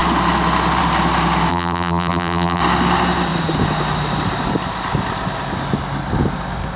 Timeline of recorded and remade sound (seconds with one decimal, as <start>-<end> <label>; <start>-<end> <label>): 0.0-1.5 recorded; 1.5-2.6 remade; 2.6-6.8 recorded